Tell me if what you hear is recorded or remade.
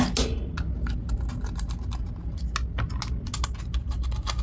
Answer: recorded